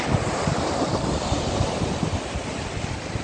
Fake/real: real